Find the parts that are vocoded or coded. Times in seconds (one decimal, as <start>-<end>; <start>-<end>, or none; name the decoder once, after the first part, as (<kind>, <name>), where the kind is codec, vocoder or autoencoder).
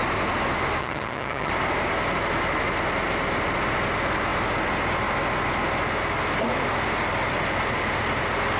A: 0.8-1.5 (vocoder, HiFi-GAN)